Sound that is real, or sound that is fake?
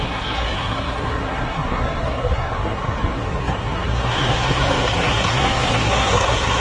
fake